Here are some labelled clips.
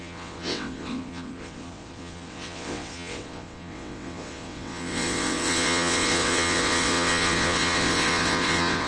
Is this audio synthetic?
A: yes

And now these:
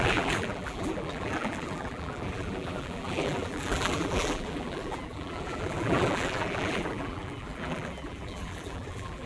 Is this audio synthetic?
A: yes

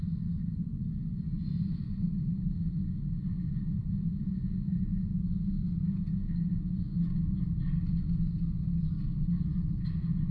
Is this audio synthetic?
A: no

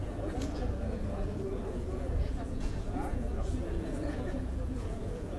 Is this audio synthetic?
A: yes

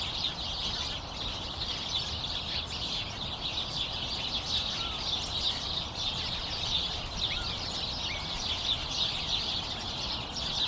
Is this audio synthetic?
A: no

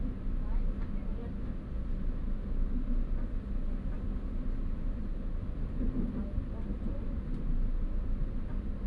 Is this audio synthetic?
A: no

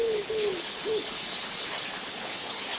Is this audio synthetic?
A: yes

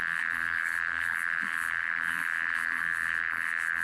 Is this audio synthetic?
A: yes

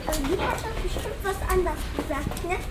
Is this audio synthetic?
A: no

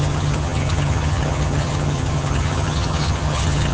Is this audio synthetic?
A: yes